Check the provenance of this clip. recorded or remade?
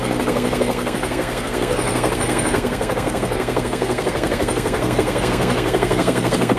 remade